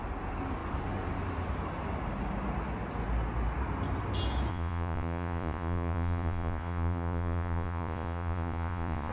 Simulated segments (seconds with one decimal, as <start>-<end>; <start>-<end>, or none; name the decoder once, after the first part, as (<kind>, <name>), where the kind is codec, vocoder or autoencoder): 4.5-9.1 (vocoder, Vocos)